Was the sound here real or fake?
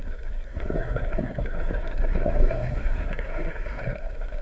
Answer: fake